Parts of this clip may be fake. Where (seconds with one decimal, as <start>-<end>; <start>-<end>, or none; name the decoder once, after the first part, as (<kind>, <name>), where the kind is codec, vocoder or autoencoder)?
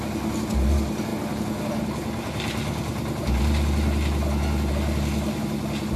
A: none